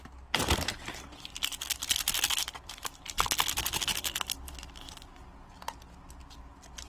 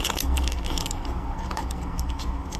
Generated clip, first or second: second